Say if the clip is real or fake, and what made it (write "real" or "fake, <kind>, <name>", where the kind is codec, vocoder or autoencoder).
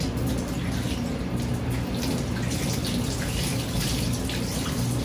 real